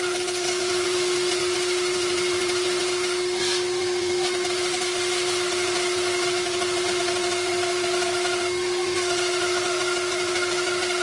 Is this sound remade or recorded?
recorded